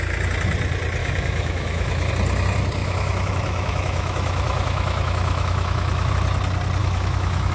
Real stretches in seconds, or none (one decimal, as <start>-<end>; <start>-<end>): 0.0-1.0; 2.1-2.8; 6.1-6.8